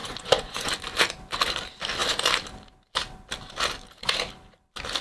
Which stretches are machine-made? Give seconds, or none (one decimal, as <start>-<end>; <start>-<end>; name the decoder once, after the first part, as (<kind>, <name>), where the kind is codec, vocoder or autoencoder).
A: 0.0-0.7 (vocoder, Vocos)